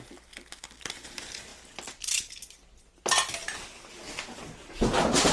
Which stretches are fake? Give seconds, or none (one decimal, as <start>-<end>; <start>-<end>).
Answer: none